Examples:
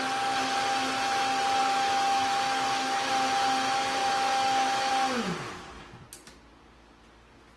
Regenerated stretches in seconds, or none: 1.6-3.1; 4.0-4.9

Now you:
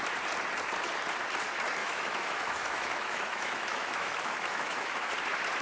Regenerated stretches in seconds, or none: 1.8-5.1

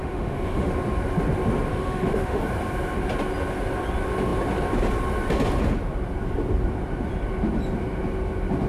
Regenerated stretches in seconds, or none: 0.0-0.7; 1.7-2.4